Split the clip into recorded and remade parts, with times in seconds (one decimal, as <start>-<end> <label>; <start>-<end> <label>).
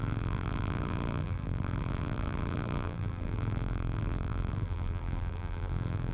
0.0-6.1 remade